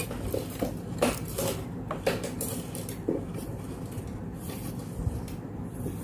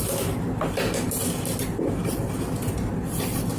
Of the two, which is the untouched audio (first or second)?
second